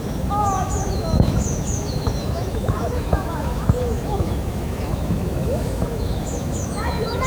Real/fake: fake